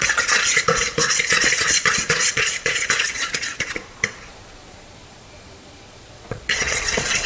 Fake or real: fake